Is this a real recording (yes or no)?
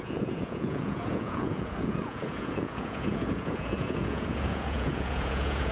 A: no